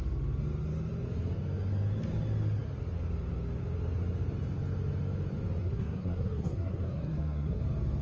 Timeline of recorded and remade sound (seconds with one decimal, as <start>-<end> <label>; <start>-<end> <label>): 0.0-5.6 recorded; 5.6-7.6 remade; 7.6-8.0 recorded